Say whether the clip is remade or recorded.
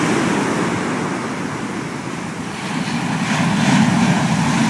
recorded